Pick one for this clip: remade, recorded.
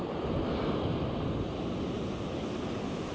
recorded